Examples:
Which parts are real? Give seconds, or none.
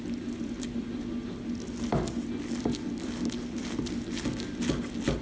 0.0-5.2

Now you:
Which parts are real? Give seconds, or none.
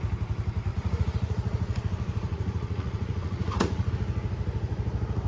0.0-0.7; 3.9-5.3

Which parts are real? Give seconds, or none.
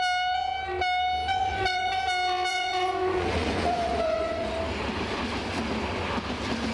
0.0-1.3; 2.0-2.5; 4.5-6.7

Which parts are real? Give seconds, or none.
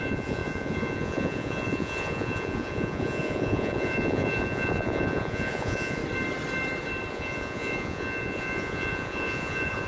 6.0-7.1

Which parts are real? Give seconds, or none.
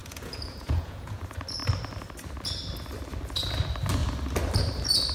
1.2-5.1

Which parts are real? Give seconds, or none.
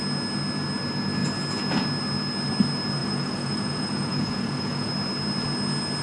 0.0-3.0; 4.9-6.0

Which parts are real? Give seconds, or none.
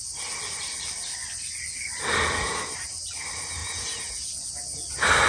0.0-3.6; 4.3-5.3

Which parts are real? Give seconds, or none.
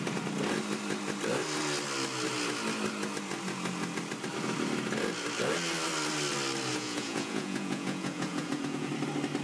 0.0-6.7; 8.9-9.4